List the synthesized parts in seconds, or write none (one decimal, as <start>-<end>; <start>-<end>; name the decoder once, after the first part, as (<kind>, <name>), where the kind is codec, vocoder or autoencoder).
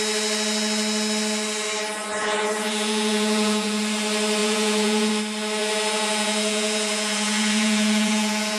2.2-3.8 (vocoder, Vocos); 4.4-5.1; 5.6-8.6